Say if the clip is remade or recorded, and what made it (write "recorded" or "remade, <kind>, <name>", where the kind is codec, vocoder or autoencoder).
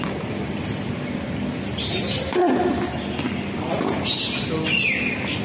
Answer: recorded